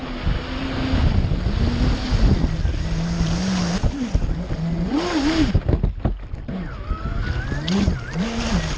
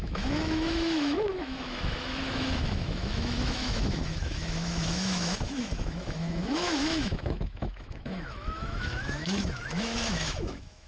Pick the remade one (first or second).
second